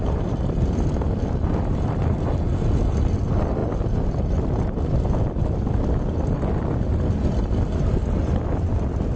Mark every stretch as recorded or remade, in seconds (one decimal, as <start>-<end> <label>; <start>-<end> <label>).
0.0-9.2 recorded